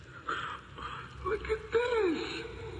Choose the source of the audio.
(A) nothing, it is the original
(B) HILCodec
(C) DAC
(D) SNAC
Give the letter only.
A